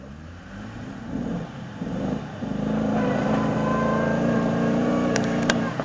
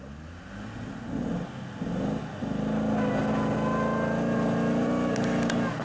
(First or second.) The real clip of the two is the second